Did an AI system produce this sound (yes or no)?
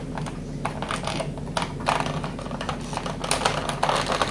no